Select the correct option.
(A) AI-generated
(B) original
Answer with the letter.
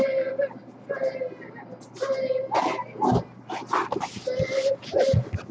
B